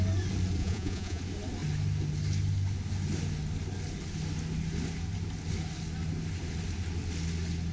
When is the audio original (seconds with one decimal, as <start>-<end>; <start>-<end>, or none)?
0.0-0.6; 1.2-7.7

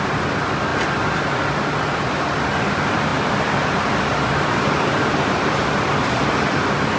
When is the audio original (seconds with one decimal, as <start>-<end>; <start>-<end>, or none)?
0.0-7.0

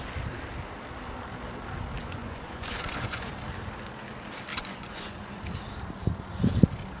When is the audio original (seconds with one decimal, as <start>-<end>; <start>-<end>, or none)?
0.0-2.0; 3.3-4.5; 5.3-7.0

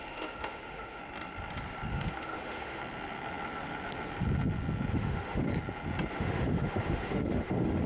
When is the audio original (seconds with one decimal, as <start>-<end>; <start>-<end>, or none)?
1.0-1.9; 2.8-4.9; 5.5-6.1